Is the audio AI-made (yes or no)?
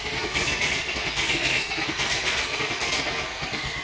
yes